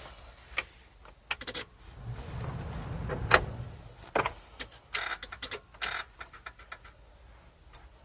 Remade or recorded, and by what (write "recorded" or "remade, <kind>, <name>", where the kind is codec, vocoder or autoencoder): recorded